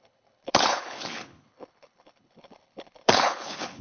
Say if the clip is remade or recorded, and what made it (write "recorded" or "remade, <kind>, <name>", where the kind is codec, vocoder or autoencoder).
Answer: remade, codec, HILCodec